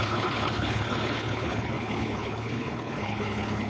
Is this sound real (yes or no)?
no